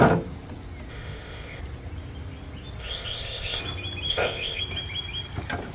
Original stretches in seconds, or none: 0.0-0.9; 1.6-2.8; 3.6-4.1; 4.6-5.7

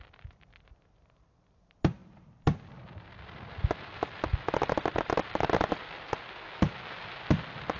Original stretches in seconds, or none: 0.0-7.8

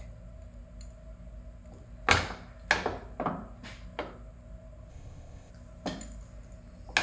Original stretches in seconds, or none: 0.0-4.9; 5.5-7.0

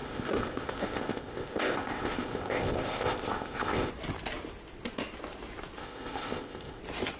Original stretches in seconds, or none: 3.9-5.8; 6.8-7.2

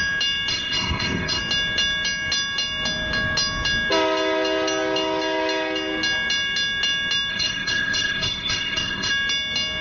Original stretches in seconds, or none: 0.0-0.5; 1.4-7.3; 9.1-9.8